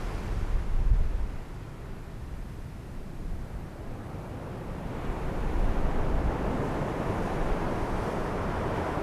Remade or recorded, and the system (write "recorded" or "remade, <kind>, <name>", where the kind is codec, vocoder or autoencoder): recorded